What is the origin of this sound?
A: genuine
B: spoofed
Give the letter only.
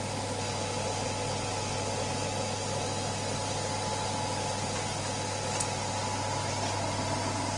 A